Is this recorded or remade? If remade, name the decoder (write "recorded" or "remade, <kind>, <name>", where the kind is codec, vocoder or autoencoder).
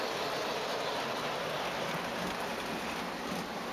recorded